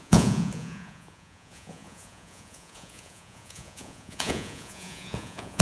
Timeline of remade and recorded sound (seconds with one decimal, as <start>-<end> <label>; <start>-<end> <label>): 0.0-5.6 remade